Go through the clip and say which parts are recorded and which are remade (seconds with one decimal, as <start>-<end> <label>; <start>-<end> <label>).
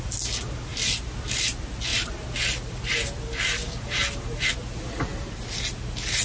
0.0-6.2 recorded